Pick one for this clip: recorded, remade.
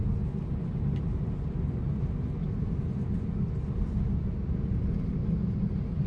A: recorded